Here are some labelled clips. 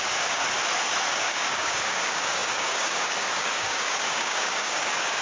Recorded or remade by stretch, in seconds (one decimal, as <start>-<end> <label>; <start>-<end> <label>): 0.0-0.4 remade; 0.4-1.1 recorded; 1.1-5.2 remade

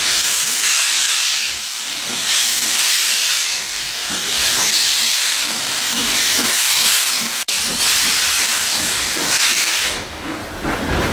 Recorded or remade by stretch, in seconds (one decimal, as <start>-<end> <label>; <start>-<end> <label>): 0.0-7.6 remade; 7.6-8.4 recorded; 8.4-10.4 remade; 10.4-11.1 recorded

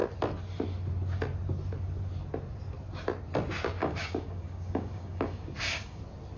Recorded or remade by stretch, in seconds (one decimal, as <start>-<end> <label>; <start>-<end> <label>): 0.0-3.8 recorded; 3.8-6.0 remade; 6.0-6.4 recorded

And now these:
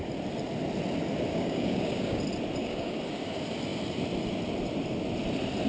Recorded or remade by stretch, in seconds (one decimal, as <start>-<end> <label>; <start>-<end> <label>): 0.0-1.3 recorded; 1.3-2.2 remade; 2.2-2.6 recorded; 2.6-3.2 remade; 3.2-5.7 recorded